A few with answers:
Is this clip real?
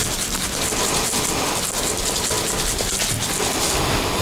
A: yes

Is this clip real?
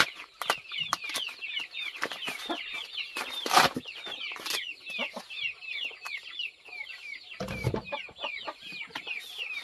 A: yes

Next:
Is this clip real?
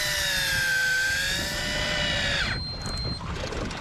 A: yes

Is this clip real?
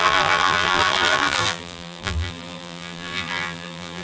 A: no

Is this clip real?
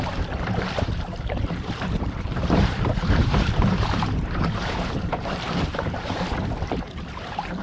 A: no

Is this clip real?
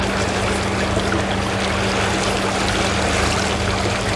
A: yes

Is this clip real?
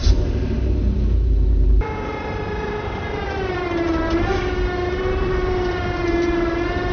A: no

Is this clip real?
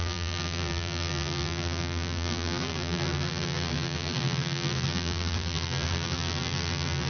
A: no